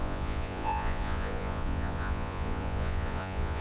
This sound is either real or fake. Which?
fake